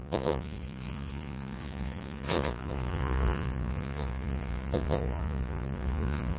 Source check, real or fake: fake